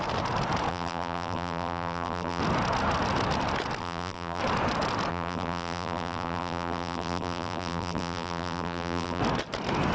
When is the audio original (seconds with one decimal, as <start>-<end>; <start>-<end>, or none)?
0.0-0.7; 2.4-3.8; 4.4-5.1; 9.2-9.9